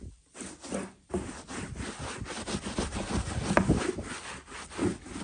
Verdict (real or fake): real